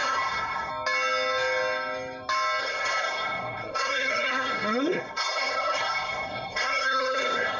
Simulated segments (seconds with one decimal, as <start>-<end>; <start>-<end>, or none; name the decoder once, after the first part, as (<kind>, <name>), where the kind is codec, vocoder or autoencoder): 0.0-0.7 (codec, SNAC); 2.6-7.6